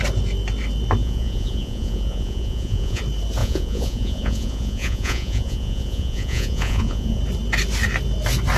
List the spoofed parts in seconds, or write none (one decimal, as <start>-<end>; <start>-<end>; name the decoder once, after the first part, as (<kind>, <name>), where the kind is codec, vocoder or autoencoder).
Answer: 1.0-3.0 (vocoder, Vocos); 3.4-7.2